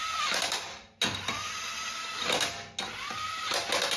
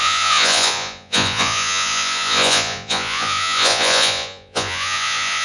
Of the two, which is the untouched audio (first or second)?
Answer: first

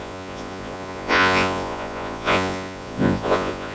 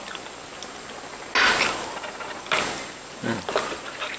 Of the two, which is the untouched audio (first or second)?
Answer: second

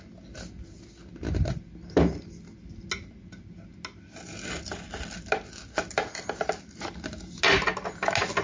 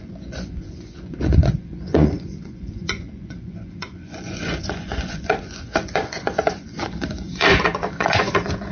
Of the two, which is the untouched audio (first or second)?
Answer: first